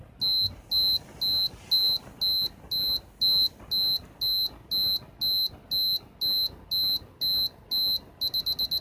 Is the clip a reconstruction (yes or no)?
no